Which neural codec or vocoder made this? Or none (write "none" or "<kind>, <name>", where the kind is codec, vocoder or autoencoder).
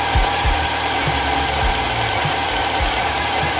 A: none